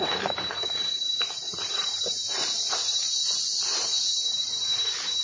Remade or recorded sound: recorded